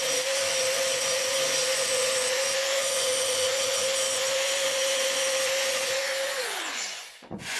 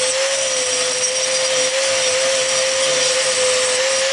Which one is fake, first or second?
first